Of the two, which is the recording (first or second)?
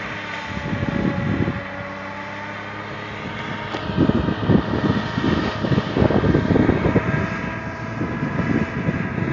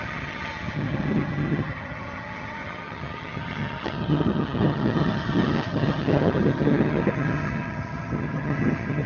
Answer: first